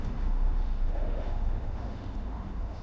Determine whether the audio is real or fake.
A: fake